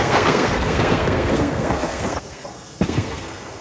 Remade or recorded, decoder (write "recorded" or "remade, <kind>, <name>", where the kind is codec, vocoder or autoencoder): remade, codec, SNAC